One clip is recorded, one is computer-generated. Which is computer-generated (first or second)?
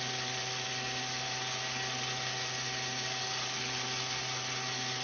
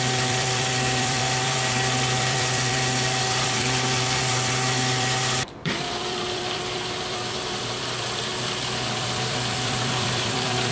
second